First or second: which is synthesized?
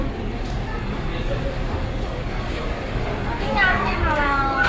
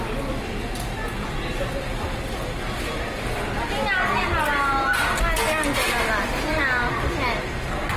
first